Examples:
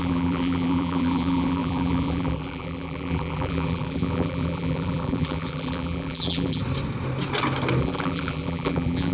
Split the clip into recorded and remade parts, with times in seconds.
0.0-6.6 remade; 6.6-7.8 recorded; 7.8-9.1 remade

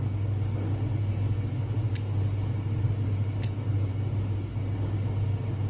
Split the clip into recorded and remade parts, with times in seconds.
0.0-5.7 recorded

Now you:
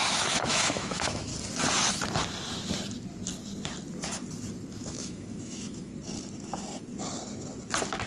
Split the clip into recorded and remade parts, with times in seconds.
0.0-1.3 remade; 1.3-4.7 recorded; 4.7-5.9 remade; 5.9-8.1 recorded

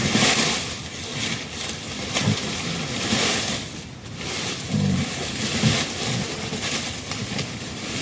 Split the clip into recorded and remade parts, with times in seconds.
0.0-0.5 recorded; 0.5-8.0 remade

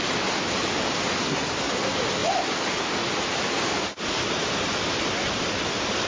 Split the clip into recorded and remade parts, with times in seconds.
0.0-1.2 recorded; 1.2-1.7 remade; 1.7-6.1 recorded

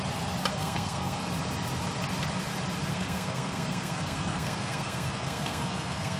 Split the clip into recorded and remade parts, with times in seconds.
0.0-0.5 recorded; 0.5-1.2 remade; 1.2-2.9 recorded; 2.9-6.2 remade

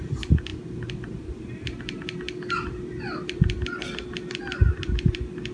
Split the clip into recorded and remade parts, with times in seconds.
0.0-5.5 recorded

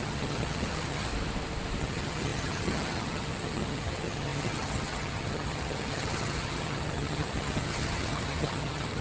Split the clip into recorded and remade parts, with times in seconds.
0.0-1.1 remade; 1.1-1.8 recorded; 1.8-9.0 remade